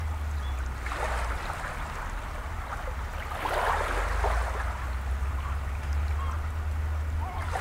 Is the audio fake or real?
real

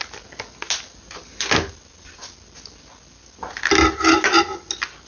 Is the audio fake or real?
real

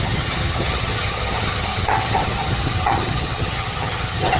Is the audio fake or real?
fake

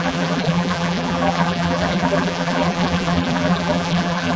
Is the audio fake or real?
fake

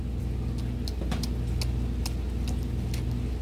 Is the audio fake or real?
real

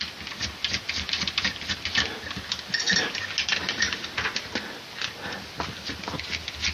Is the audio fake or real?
real